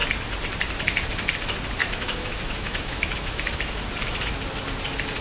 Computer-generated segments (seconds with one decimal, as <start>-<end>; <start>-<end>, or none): 1.8-3.6